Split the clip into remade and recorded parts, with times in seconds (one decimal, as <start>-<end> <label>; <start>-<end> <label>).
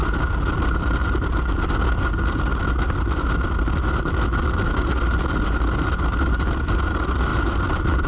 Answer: 0.0-0.5 recorded; 0.5-1.0 remade; 1.0-1.5 recorded; 1.5-2.5 remade; 2.5-4.7 recorded; 4.7-8.1 remade